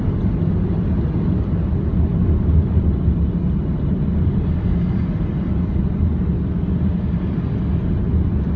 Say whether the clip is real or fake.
real